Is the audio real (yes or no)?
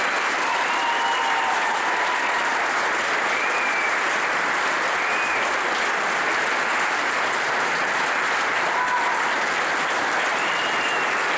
yes